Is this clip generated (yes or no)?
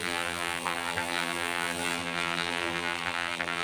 yes